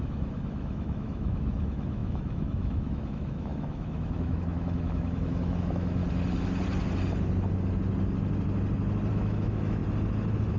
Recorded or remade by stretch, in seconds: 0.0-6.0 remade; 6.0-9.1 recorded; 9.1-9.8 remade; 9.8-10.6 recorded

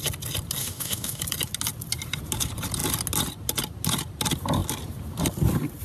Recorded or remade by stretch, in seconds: 0.0-0.6 recorded; 0.6-1.2 remade; 1.2-5.8 recorded

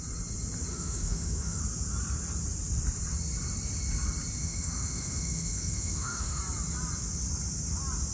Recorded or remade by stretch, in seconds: 0.0-0.7 recorded; 0.7-1.6 remade; 1.6-4.4 recorded; 4.4-6.4 remade; 6.4-8.1 recorded